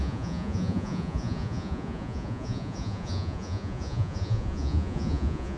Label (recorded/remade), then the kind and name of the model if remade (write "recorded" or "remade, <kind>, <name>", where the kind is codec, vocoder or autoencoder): remade, vocoder, Vocos